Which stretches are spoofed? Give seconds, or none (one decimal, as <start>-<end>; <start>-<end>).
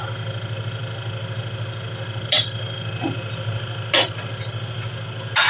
none